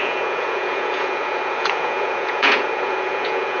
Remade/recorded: remade